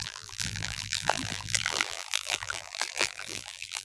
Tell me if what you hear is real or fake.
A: fake